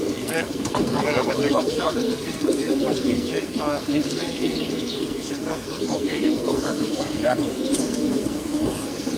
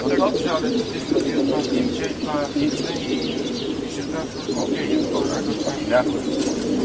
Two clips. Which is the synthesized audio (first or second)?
first